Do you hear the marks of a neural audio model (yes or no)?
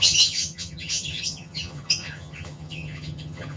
yes